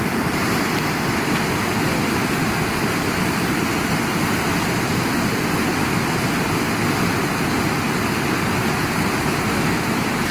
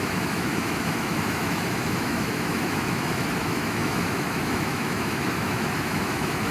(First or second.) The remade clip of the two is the second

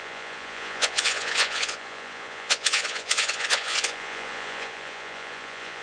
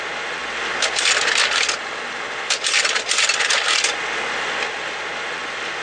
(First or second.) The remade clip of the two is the first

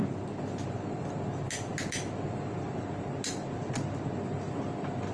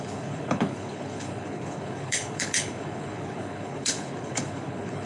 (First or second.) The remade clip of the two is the second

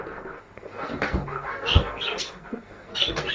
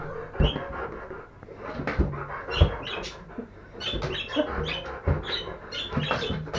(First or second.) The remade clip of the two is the first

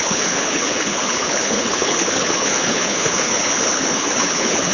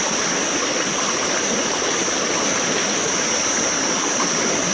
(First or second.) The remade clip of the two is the first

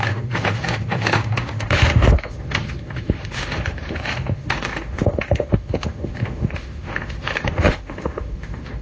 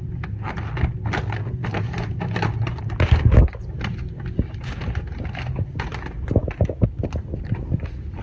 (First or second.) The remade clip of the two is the first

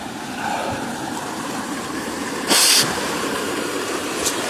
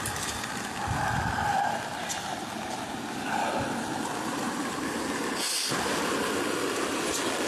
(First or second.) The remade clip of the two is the first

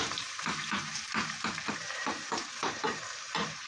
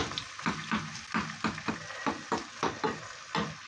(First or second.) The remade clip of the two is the first